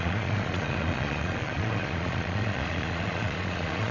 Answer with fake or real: fake